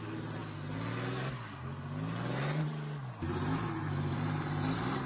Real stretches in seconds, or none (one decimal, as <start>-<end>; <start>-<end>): 0.4-3.2